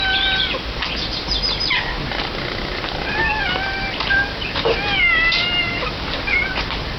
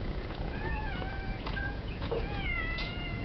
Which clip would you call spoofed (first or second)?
second